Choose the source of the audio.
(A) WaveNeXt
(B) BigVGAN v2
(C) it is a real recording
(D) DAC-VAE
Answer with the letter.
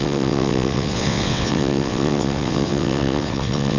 A